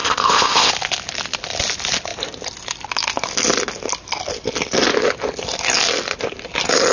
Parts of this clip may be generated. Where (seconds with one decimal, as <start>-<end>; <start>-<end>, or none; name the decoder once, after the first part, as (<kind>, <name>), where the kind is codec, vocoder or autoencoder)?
0.0-0.7 (codec, ZipCodec)